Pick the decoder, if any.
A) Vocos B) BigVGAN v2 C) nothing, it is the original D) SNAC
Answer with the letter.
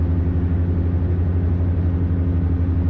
C